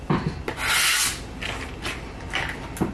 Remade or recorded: recorded